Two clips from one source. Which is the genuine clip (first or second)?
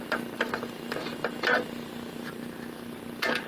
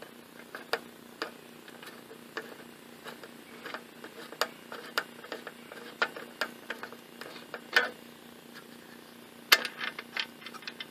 second